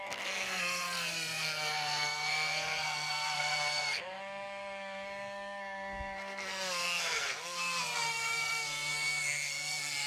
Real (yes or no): no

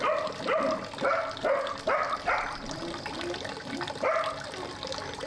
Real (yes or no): yes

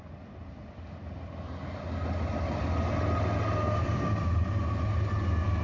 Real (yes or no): yes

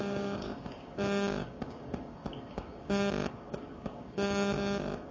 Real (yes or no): no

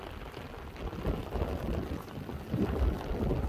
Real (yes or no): yes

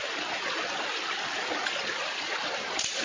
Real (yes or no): yes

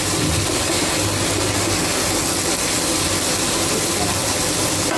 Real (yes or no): yes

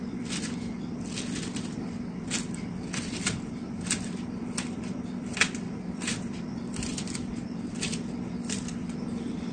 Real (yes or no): yes